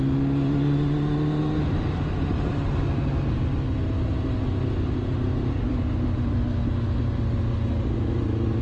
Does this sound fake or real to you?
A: real